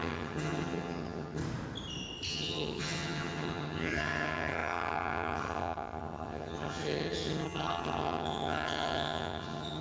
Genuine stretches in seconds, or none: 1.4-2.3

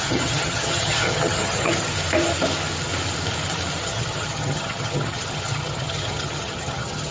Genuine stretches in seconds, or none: 1.7-3.8

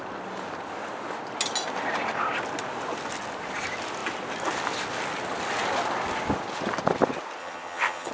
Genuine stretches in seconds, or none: 0.0-7.4

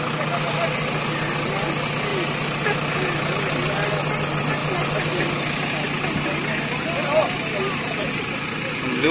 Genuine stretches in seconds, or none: 0.0-9.1